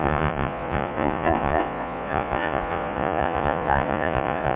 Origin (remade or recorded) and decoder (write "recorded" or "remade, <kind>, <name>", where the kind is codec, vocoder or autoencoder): remade, vocoder, Vocos